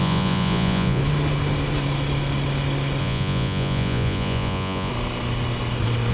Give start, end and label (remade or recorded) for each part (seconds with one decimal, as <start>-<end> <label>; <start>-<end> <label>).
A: 0.0-1.0 remade; 1.0-3.0 recorded; 3.0-4.9 remade; 4.9-6.1 recorded